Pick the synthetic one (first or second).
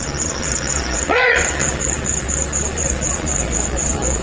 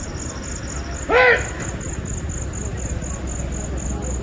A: first